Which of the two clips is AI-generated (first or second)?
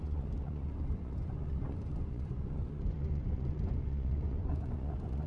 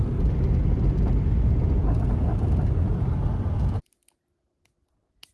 first